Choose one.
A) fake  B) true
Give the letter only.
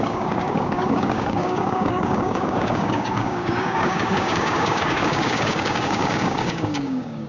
A